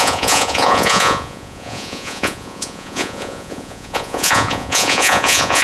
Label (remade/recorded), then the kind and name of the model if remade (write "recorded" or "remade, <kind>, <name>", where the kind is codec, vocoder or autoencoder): remade, vocoder, Vocos